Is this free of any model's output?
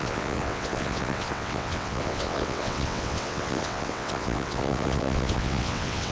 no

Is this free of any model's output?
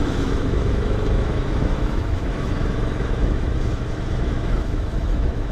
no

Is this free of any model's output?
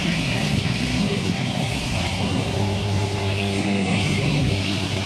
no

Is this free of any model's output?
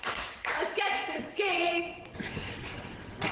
no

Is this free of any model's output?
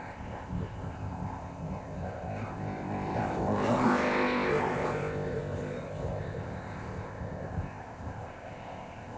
no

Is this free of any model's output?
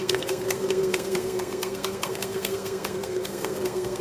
no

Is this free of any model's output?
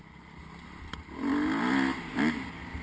yes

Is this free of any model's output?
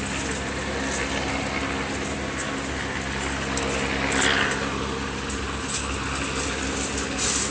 yes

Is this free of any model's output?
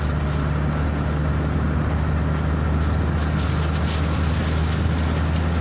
yes